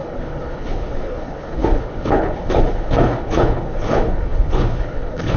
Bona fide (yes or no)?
no